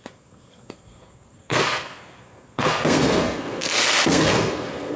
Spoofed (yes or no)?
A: yes